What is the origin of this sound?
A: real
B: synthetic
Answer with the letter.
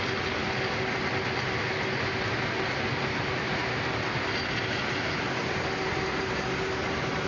A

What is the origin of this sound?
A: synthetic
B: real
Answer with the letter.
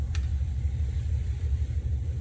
B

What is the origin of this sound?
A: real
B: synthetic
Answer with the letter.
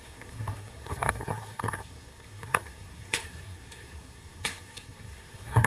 B